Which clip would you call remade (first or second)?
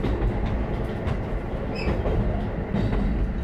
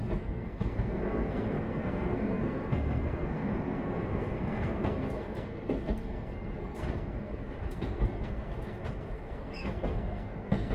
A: second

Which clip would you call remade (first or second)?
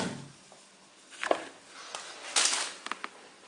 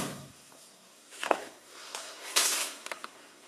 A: second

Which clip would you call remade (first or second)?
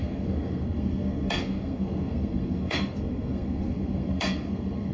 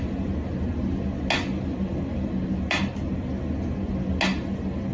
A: first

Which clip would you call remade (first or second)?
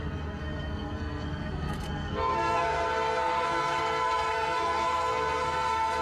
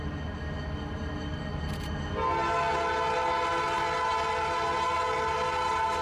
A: first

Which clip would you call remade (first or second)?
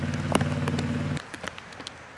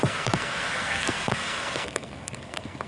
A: second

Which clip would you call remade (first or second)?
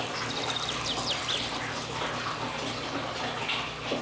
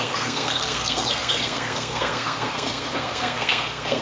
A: second